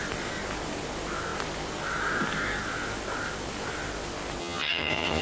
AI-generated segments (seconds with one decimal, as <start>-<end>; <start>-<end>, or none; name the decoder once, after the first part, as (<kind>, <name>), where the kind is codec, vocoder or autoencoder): 4.4-5.2 (vocoder, HiFi-GAN)